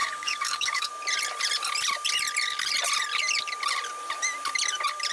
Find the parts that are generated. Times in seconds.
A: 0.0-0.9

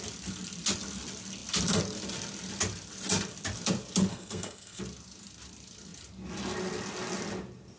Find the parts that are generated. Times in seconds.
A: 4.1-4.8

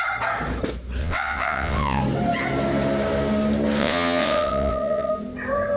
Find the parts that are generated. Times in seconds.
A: 1.0-2.0; 3.8-5.1

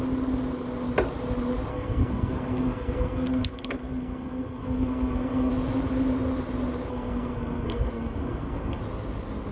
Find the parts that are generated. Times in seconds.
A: 1.7-5.5; 6.9-8.8

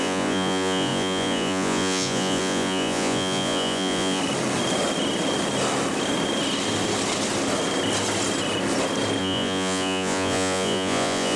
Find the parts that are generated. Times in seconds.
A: 0.0-4.2; 9.2-11.4

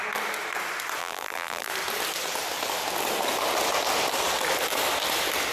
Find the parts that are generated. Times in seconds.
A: 1.0-1.7

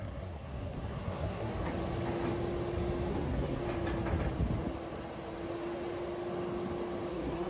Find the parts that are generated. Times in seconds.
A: 0.0-1.5; 3.1-3.6; 7.1-7.5